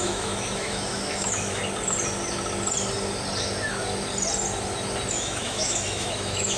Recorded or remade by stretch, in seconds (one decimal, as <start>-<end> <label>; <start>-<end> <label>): 0.0-1.6 remade; 1.6-5.1 recorded; 5.1-6.6 remade